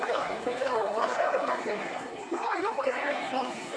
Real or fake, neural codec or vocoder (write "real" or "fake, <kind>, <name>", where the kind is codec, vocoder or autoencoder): fake, codec, SNAC